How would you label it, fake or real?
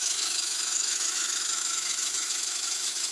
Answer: fake